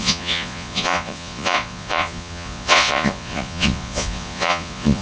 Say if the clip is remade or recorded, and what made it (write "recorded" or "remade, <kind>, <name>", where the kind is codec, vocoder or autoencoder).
remade, vocoder, Vocos